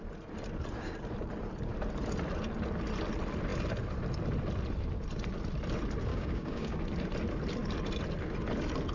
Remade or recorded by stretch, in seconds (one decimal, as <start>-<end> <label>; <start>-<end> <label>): 0.0-6.1 recorded; 6.1-6.8 remade; 6.8-8.9 recorded